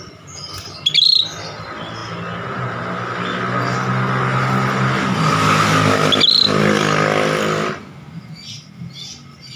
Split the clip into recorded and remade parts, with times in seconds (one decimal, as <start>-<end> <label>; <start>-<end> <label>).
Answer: 0.0-9.6 recorded